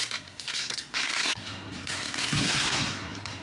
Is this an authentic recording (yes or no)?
no